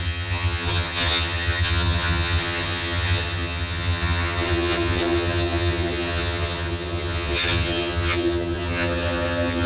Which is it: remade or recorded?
remade